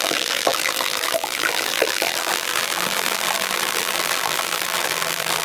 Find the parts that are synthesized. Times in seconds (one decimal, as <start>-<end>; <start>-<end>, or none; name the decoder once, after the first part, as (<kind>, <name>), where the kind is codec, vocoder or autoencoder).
0.0-5.4 (vocoder, BigVGAN v2)